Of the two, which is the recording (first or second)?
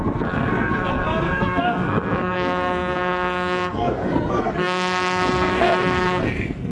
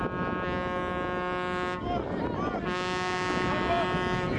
second